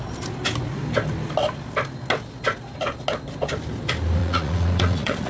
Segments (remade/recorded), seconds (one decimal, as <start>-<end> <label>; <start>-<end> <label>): 0.0-4.2 recorded; 4.2-5.3 remade